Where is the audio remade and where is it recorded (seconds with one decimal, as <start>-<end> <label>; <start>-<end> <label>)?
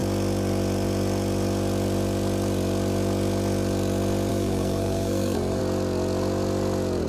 0.0-4.3 recorded; 4.3-5.6 remade; 5.6-7.1 recorded